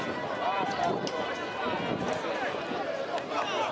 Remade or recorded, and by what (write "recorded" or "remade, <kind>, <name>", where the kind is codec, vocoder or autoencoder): recorded